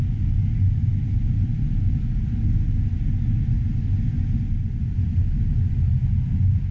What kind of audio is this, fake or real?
real